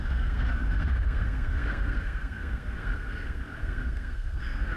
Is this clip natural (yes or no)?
no